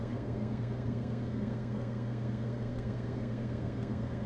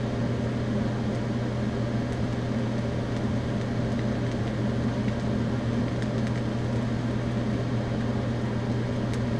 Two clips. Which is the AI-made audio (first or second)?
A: first